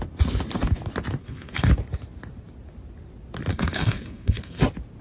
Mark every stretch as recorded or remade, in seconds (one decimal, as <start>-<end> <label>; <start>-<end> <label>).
0.0-1.2 recorded; 1.2-1.7 remade; 1.7-3.5 recorded; 3.5-4.6 remade; 4.6-5.0 recorded